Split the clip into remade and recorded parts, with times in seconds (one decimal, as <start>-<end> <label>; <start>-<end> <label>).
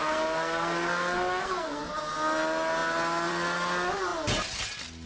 0.0-1.8 remade; 1.8-5.1 recorded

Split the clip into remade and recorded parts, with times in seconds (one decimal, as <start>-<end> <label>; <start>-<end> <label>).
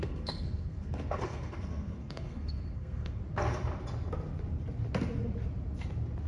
0.0-3.2 remade; 3.2-6.3 recorded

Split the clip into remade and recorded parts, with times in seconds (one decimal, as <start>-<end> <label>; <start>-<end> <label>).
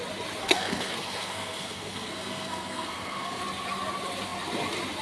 0.0-0.4 recorded; 0.4-3.4 remade; 3.4-5.0 recorded